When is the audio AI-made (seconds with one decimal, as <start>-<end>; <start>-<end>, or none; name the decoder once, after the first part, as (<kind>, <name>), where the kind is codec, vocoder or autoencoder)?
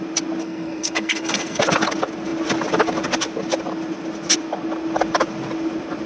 0.4-1.6 (codec, SNAC)